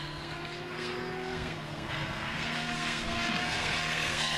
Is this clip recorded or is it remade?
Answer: remade